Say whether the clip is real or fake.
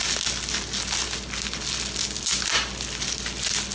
real